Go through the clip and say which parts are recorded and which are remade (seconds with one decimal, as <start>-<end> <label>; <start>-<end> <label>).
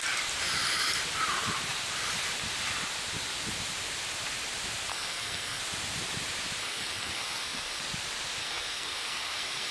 0.0-4.9 recorded; 4.9-5.6 remade; 5.6-6.6 recorded; 6.6-7.8 remade; 7.8-8.4 recorded; 8.4-9.7 remade